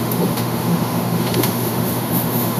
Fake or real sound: fake